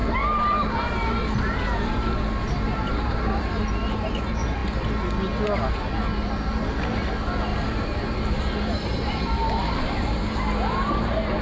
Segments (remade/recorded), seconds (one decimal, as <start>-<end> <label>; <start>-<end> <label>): 0.0-3.7 remade; 3.7-7.5 recorded; 7.5-10.1 remade; 10.1-11.4 recorded